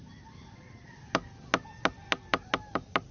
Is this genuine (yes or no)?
yes